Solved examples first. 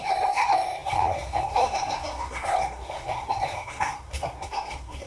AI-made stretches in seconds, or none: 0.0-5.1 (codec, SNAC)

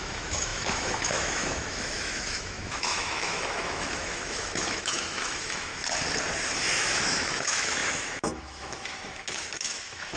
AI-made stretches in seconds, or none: 0.0-5.7 (autoencoder, DAC-VAE); 6.7-10.2